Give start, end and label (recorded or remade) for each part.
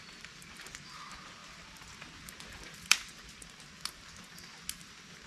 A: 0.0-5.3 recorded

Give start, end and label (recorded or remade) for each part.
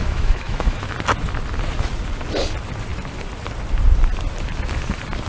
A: 0.0-0.9 remade; 0.9-5.3 recorded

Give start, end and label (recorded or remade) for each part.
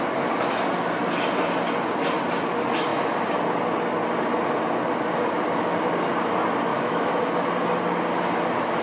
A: 0.0-6.7 recorded; 6.7-7.3 remade; 7.3-8.8 recorded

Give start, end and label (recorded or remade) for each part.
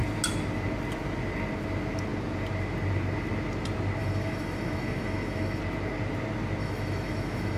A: 0.0-4.0 recorded; 4.0-5.6 remade; 5.6-6.6 recorded; 6.6-7.6 remade